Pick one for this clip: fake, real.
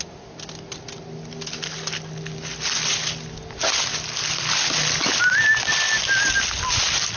real